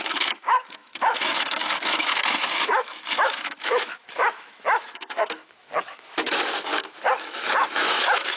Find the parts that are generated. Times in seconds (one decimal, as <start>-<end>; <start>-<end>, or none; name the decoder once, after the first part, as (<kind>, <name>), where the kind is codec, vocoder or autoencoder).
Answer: 0.0-8.4 (autoencoder, DAC-VAE)